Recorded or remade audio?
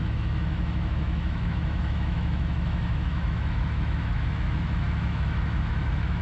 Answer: remade